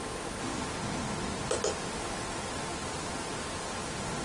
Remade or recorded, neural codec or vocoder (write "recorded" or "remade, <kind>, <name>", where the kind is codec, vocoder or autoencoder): recorded